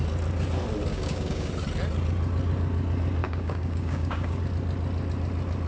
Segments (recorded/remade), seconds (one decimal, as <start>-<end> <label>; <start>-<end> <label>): 0.0-0.9 recorded; 0.9-1.5 remade; 1.5-3.2 recorded; 3.2-4.4 remade; 4.4-5.7 recorded